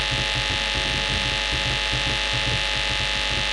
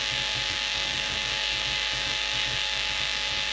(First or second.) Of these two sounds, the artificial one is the second